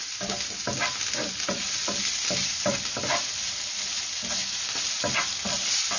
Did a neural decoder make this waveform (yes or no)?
no